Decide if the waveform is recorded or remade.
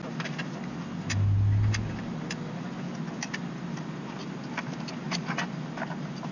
recorded